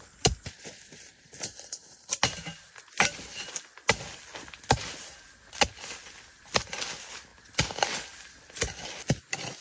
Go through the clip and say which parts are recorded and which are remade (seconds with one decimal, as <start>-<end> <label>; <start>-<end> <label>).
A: 0.0-9.6 recorded